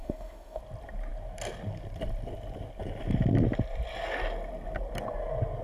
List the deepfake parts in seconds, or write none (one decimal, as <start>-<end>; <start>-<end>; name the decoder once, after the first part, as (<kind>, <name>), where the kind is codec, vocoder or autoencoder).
0.0-0.6 (autoencoder, DAC-VAE)